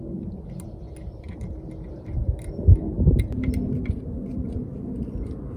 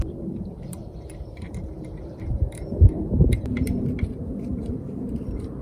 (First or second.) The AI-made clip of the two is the second